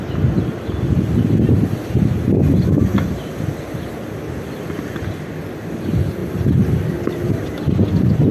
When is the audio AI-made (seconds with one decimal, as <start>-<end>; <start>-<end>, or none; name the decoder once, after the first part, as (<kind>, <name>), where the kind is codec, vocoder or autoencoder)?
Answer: none